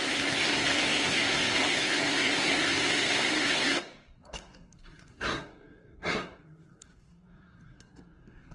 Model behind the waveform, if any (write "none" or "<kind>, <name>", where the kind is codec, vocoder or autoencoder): codec, SNAC